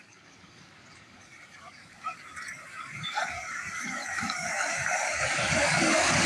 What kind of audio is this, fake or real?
fake